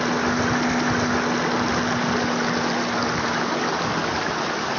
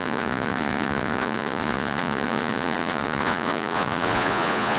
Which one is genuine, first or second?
first